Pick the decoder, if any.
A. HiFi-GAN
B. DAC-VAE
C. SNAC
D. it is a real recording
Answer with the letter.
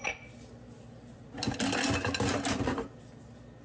D